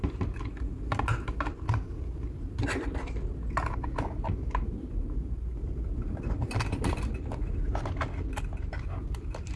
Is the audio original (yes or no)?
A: yes